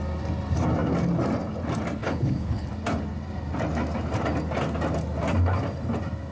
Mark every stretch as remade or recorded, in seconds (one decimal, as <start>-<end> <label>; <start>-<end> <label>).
0.0-2.0 recorded; 2.0-2.7 remade; 2.7-6.3 recorded